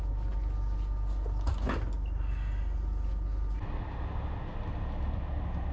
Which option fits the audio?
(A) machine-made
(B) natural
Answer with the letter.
B